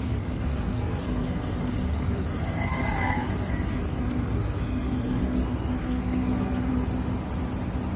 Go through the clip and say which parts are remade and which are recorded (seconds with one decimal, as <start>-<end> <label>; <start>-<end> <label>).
0.0-6.7 remade; 6.7-8.0 recorded